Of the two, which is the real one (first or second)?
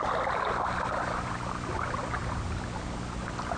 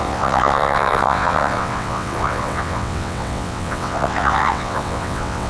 first